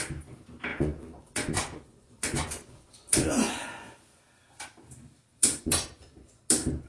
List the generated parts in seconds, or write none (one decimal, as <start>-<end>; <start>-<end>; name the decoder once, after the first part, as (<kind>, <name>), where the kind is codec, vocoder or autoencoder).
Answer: 0.7-4.2 (vocoder, Vocos); 5.3-6.4